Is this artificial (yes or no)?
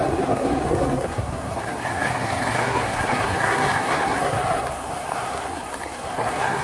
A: yes